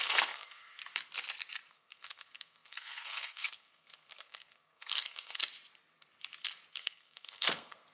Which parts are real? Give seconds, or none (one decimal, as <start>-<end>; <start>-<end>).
0.8-1.7; 5.4-6.7